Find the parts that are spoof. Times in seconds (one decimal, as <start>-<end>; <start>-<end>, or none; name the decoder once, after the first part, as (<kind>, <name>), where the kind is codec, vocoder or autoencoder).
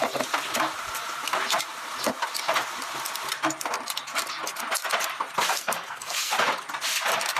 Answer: 5.5-6.3 (codec, SNAC)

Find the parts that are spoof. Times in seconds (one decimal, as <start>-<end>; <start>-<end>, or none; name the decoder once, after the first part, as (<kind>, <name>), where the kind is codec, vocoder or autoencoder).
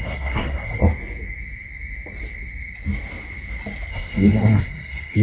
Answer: 0.0-0.8 (codec, SNAC); 3.9-5.2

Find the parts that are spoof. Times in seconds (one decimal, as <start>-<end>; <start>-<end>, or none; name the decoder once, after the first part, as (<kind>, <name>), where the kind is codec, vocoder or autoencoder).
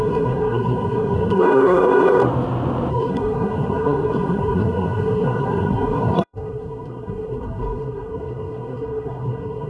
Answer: 0.0-2.2 (codec, SNAC); 2.9-9.7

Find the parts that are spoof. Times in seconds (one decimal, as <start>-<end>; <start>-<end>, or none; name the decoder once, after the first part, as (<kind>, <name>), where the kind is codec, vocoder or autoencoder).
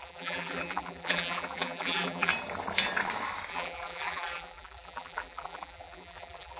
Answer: 0.0-2.3 (vocoder, BigVGAN v2); 3.5-6.6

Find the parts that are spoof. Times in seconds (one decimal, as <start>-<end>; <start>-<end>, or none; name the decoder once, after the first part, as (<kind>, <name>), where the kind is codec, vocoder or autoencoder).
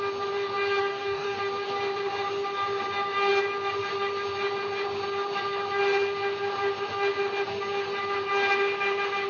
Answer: 0.9-1.4 (codec, DAC)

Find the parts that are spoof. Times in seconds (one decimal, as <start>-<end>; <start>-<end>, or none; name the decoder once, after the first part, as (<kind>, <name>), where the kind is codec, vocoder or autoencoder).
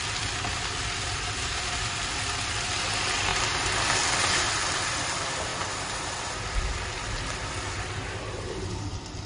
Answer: none